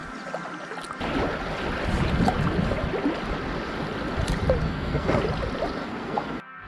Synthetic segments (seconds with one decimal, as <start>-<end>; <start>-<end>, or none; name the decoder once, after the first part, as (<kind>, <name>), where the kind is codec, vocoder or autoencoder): 4.6-5.2 (codec, SNAC); 5.8-6.7